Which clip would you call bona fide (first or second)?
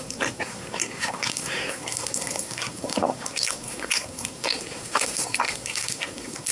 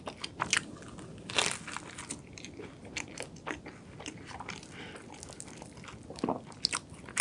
second